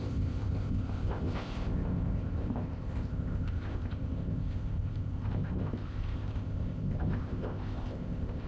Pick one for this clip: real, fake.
fake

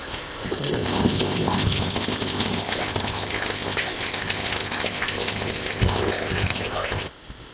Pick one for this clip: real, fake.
fake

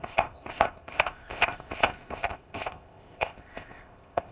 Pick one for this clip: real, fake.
fake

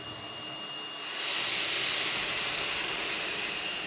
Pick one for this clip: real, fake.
real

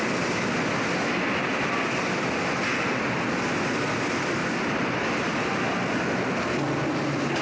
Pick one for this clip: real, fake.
real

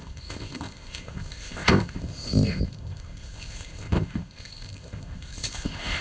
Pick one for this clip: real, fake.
fake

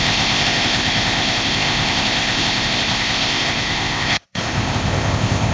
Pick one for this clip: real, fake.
fake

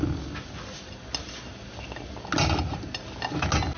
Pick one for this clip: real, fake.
real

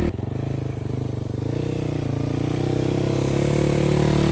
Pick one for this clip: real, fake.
real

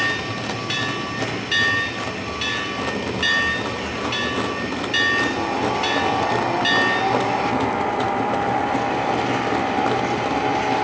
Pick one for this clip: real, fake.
real